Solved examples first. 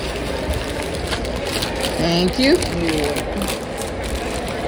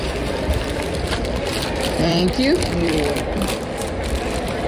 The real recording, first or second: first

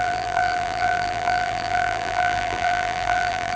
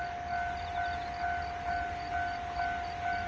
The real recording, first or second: second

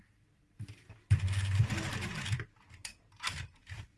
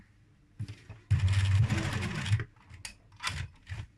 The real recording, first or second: second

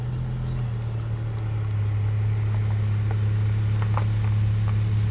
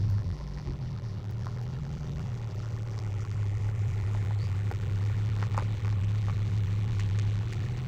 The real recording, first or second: first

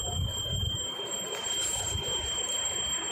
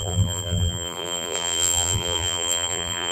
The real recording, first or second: first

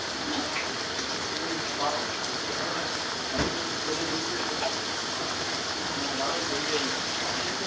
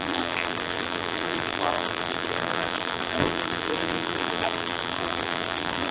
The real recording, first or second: first